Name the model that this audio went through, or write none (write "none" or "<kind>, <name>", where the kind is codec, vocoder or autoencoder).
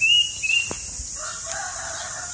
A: none